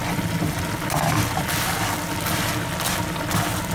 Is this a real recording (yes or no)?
yes